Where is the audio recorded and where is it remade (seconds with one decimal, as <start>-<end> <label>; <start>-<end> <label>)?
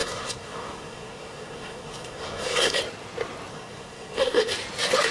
0.0-2.8 remade; 2.8-3.5 recorded; 3.5-4.5 remade; 4.5-5.1 recorded